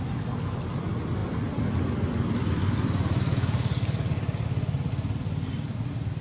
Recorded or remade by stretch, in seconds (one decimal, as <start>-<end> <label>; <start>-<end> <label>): 0.0-6.2 recorded